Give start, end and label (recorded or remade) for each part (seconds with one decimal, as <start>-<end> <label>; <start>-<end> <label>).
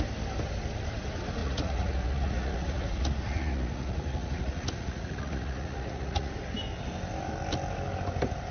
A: 0.0-1.4 recorded; 1.4-6.3 remade; 6.3-8.5 recorded